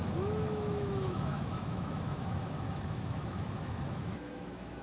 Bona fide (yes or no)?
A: no